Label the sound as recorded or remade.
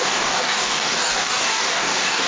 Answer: remade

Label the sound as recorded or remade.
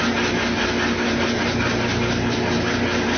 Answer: recorded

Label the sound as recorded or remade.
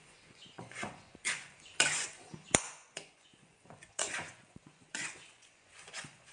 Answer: remade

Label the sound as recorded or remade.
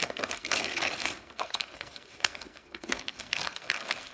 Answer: remade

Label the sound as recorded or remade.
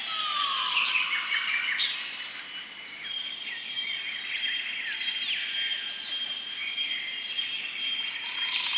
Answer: recorded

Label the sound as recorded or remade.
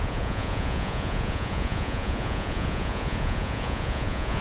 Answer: remade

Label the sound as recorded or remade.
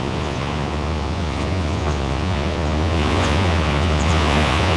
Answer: remade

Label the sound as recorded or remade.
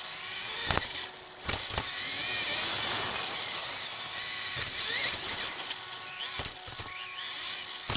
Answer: recorded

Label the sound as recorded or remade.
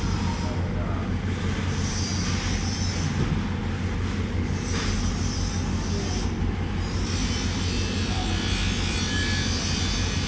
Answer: recorded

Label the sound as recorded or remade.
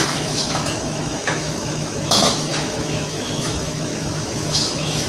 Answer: remade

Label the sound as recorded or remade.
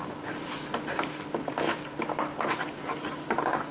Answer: recorded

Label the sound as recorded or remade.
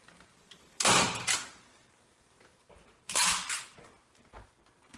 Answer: remade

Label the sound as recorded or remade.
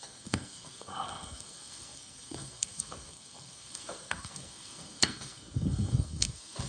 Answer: remade